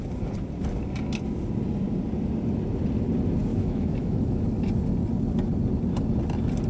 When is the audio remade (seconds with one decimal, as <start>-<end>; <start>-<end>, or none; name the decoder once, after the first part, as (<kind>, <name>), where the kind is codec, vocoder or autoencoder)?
3.5-4.4 (autoencoder, DAC-VAE)